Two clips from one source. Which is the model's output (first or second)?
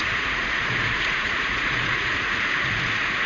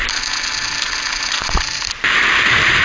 first